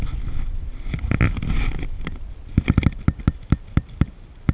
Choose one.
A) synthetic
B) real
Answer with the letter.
B